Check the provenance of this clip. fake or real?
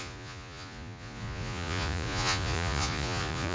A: fake